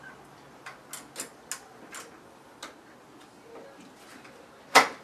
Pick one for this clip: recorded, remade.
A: recorded